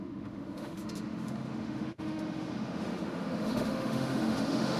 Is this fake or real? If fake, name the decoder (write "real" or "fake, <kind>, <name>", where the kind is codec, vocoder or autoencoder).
fake, autoencoder, DAC-VAE